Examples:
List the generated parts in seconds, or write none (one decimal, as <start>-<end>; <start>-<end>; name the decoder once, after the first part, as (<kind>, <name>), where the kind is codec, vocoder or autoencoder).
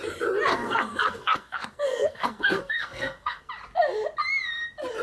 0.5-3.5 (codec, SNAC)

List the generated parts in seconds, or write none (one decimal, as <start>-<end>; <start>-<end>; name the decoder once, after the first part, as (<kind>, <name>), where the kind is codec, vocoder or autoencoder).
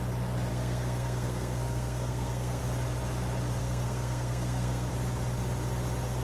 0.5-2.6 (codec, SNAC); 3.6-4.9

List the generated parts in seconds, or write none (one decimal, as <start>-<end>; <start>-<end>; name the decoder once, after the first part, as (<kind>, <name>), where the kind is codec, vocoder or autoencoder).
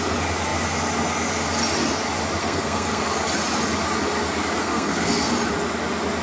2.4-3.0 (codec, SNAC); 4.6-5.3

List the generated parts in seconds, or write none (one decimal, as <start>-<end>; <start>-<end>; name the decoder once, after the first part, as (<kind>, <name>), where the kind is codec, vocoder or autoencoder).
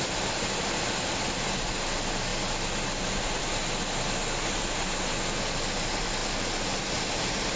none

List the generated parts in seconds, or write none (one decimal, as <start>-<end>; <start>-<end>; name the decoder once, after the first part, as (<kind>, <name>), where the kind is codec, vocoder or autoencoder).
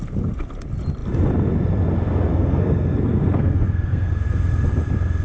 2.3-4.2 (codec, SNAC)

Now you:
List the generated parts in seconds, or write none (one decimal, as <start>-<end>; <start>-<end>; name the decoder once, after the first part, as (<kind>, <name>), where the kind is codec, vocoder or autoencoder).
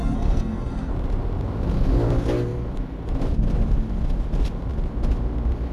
0.0-0.9 (codec, SNAC)